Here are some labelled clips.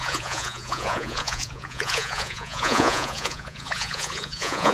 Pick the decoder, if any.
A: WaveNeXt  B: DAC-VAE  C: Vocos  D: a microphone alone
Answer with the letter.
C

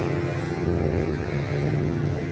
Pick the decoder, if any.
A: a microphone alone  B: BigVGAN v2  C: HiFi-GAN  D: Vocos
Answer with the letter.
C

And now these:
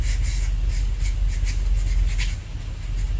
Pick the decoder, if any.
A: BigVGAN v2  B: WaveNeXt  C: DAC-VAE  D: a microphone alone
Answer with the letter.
D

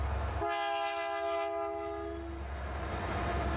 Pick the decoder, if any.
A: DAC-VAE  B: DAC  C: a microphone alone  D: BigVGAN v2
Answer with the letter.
C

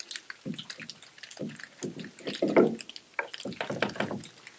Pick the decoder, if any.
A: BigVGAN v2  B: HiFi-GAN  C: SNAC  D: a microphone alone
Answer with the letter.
D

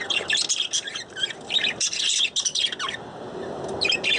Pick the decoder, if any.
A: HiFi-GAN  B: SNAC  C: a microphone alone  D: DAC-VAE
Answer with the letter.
C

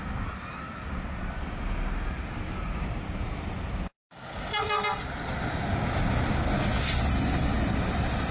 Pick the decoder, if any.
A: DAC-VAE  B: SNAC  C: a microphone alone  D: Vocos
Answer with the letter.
C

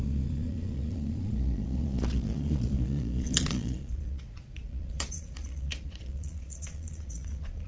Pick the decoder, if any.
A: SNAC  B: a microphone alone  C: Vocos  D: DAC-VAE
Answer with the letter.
C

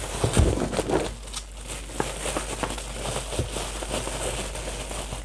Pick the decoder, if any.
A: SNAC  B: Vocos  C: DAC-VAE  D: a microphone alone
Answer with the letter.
D